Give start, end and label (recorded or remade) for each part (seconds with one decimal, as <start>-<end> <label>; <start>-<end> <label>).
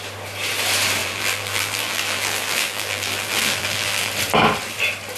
0.0-1.0 recorded; 1.0-4.1 remade; 4.1-5.2 recorded